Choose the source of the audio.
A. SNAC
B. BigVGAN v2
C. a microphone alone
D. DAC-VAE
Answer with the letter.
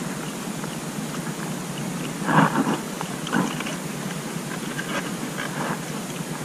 C